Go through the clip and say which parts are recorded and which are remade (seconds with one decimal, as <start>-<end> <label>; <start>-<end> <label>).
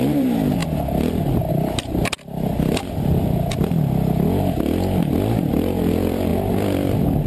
0.0-0.6 remade; 0.6-1.5 recorded; 1.5-2.0 remade; 2.0-5.5 recorded; 5.5-6.3 remade; 6.3-7.3 recorded